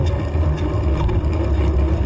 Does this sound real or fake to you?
real